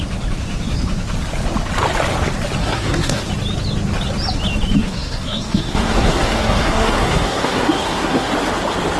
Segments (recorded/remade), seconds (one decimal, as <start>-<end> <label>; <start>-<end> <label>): 0.0-2.6 recorded; 2.6-3.3 remade; 3.3-4.8 recorded; 4.8-8.3 remade; 8.3-9.0 recorded